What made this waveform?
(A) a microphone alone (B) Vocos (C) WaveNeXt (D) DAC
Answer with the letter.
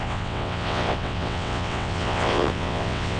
C